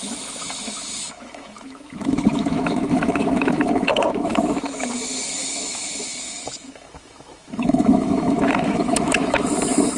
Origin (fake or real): fake